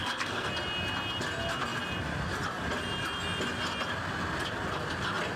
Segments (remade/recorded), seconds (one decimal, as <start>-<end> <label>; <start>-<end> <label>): 0.0-0.5 remade; 0.5-5.4 recorded

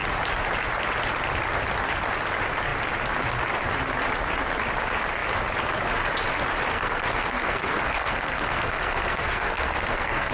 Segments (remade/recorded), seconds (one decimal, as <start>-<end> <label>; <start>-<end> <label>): 0.0-6.7 recorded; 6.7-10.3 remade

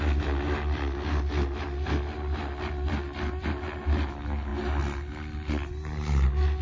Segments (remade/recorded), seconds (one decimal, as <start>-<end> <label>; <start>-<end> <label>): 0.0-6.6 recorded

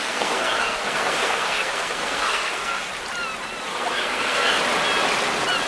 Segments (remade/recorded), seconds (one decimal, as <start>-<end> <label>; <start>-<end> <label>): 0.0-2.9 remade; 2.9-3.7 recorded; 3.7-4.6 remade; 4.6-5.7 recorded

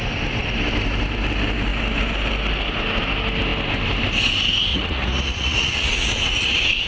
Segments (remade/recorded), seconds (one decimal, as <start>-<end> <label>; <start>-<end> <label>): 0.0-4.7 recorded; 4.7-6.9 remade

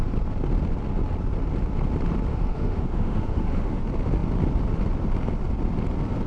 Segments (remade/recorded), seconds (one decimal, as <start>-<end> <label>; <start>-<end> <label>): 0.0-2.3 recorded; 2.3-3.8 remade; 3.8-6.3 recorded

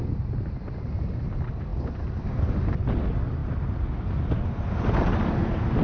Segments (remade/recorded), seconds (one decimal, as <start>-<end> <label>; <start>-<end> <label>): 0.0-5.8 recorded